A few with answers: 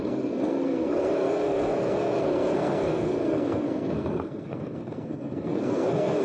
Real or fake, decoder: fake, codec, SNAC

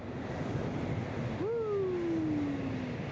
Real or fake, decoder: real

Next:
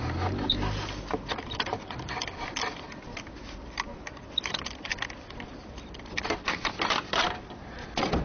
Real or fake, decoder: real